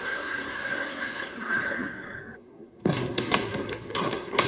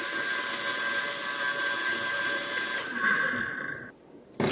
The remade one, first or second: first